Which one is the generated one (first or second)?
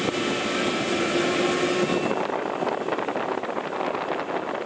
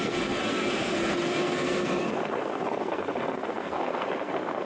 second